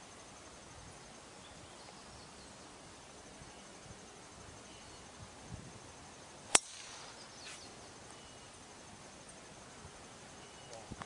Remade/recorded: recorded